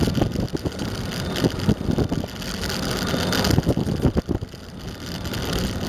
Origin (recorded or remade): recorded